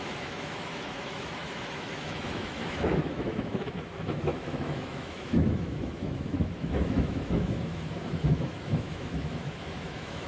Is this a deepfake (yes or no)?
yes